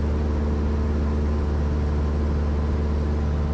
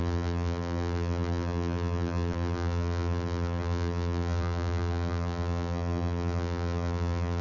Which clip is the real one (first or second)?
first